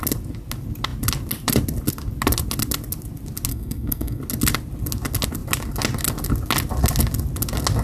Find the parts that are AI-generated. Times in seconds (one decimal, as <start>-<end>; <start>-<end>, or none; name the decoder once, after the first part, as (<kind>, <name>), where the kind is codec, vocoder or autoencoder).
3.5-4.2 (codec, SNAC)

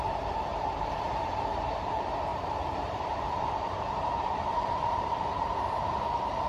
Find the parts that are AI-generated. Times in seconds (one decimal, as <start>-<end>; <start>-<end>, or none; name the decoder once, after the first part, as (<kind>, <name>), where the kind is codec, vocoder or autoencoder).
0.0-6.5 (vocoder, BigVGAN v2)

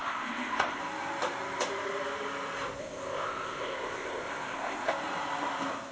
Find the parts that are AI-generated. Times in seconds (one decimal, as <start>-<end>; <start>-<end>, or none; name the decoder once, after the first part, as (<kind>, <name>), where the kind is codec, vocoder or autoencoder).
0.0-0.8 (codec, ZipCodec); 2.8-4.9